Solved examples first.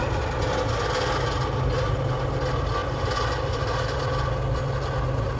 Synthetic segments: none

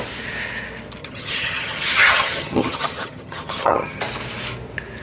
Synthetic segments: 1.0-4.0 (vocoder, HiFi-GAN)

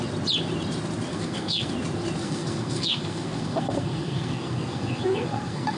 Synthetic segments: 1.1-1.7 (codec, SNAC); 2.2-5.8

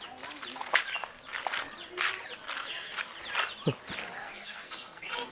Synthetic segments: 4.2-5.3 (codec, SNAC)

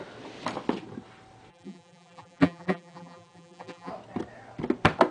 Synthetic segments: 1.5-3.9 (vocoder, BigVGAN v2)

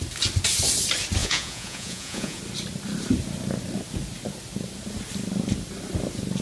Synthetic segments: 1.2-2.4 (vocoder, Vocos)

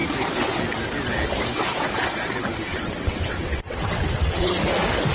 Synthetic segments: 2.7-4.5 (vocoder, WaveNeXt)

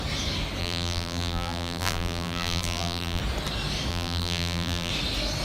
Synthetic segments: 0.6-3.2 (vocoder, BigVGAN v2); 3.9-4.9